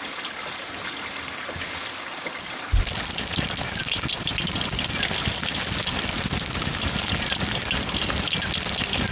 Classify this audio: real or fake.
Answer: real